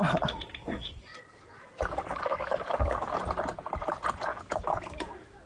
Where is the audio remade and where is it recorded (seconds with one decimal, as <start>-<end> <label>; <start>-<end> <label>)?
0.0-0.6 recorded; 0.6-3.2 remade; 3.2-4.3 recorded; 4.3-5.5 remade

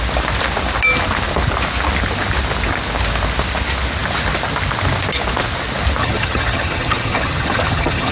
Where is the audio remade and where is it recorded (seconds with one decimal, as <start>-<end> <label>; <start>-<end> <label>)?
0.0-6.0 recorded; 6.0-8.1 remade

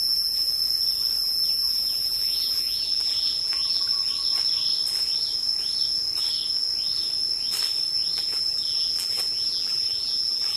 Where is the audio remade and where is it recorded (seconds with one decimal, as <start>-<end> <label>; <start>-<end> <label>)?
0.0-0.5 remade; 0.5-1.2 recorded; 1.2-3.9 remade; 3.9-8.1 recorded; 8.1-10.6 remade

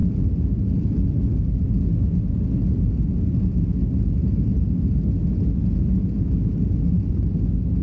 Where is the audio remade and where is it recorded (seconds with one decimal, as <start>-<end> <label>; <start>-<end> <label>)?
0.0-7.8 recorded

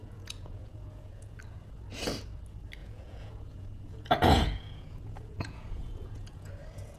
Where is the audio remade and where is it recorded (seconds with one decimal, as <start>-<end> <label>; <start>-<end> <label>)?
0.0-1.4 remade; 1.4-2.8 recorded; 2.8-6.5 remade; 6.5-7.0 recorded

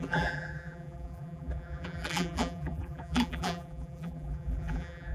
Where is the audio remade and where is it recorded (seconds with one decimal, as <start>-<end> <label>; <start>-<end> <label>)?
0.0-5.1 remade